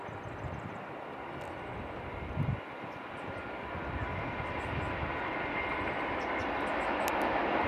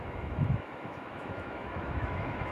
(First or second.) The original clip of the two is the first